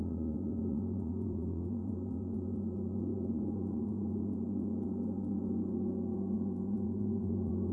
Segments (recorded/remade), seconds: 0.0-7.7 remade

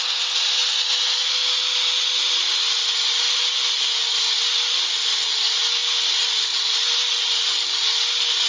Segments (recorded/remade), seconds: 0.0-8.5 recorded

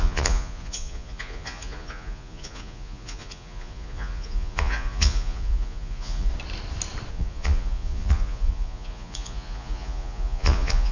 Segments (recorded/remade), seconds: 0.0-6.3 remade; 6.3-7.1 recorded; 7.1-10.9 remade